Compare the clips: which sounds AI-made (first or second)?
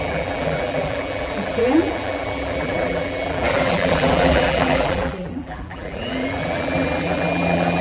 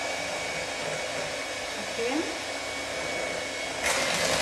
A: first